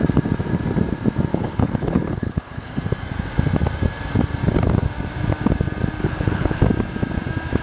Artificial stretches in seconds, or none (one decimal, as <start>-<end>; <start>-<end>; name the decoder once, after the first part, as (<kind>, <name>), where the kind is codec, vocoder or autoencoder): 1.3-2.7 (codec, HILCodec); 6.0-6.6